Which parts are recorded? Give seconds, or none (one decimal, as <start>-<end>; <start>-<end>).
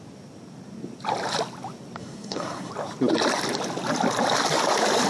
0.0-2.0; 2.7-5.1